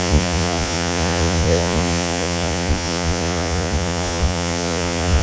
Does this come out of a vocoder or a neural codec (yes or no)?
yes